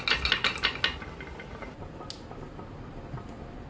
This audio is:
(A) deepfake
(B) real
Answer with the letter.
B